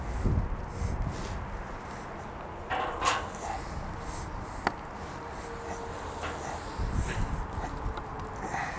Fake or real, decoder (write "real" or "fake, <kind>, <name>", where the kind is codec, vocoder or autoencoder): real